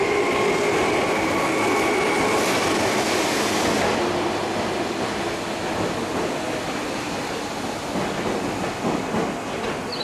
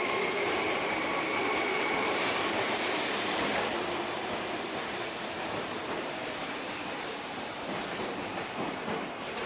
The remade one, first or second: second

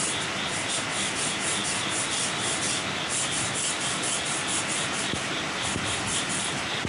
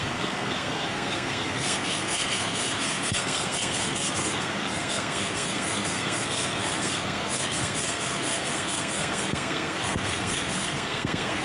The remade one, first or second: second